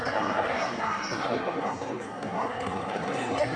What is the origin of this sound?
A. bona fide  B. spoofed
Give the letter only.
B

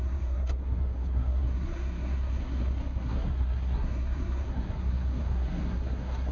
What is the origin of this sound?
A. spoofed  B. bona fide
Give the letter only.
A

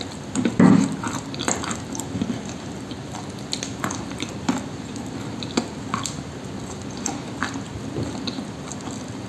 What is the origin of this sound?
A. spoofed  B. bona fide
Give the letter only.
B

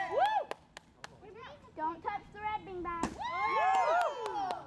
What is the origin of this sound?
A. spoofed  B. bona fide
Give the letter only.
B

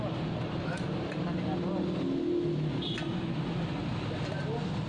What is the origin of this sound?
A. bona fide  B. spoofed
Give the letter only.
A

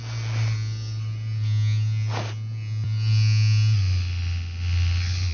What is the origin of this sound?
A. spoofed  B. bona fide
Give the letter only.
B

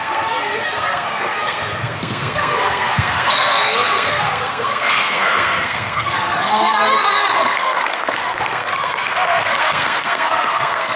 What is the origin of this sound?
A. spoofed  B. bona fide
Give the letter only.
A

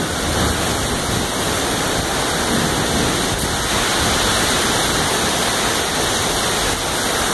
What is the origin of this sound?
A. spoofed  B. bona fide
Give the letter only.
B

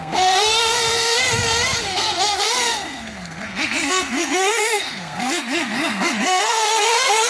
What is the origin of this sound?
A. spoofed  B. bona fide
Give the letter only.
A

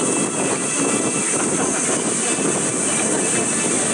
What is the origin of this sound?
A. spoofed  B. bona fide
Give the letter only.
B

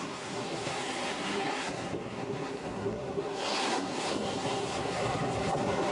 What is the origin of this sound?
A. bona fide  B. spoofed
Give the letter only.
B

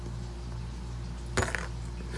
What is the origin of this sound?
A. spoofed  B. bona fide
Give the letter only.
B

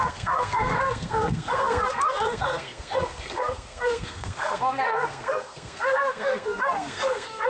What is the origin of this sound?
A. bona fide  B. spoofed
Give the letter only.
B